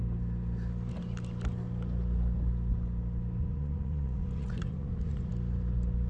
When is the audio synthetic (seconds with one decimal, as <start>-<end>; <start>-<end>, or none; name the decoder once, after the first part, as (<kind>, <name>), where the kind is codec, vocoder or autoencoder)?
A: 3.4-5.3 (vocoder, Vocos)